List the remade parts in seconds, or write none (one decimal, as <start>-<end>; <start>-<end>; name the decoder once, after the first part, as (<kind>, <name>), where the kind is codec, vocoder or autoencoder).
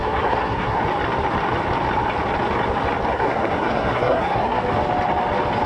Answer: 0.0-0.8 (codec, SNAC); 3.1-4.6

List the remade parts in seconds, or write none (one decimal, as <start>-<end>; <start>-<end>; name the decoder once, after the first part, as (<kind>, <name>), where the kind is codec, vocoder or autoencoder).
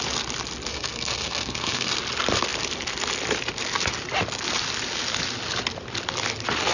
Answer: 0.7-1.9 (codec, SNAC)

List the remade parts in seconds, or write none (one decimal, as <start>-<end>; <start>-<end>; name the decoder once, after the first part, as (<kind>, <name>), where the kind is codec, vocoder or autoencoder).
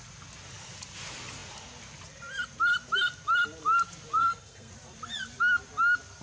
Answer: 4.2-4.7 (codec, SNAC)